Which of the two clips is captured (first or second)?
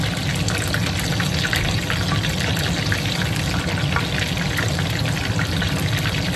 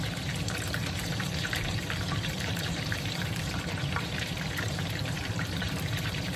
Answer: first